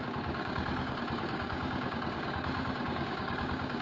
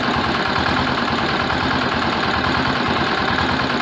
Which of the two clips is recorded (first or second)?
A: second